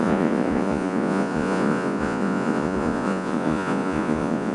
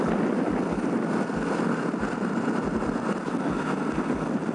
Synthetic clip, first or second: first